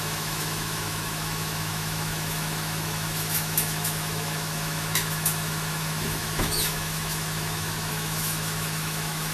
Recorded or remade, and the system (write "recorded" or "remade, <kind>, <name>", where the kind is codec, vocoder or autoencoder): remade, autoencoder, DAC-VAE